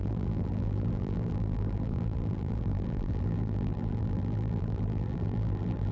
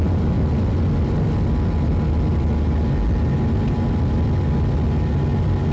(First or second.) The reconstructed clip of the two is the first